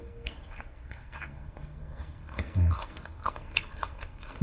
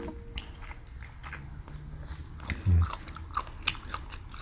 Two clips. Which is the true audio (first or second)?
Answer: second